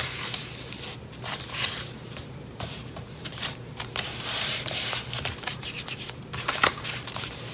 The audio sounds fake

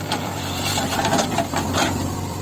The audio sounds fake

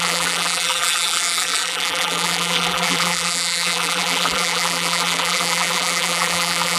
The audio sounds fake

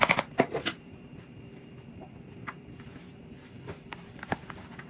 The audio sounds fake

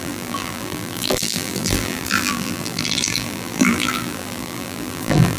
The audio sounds fake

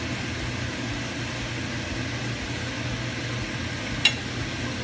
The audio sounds real